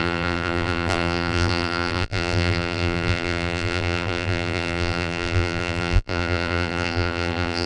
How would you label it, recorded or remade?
remade